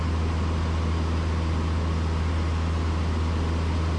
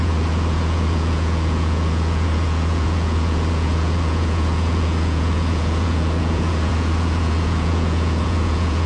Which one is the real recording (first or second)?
first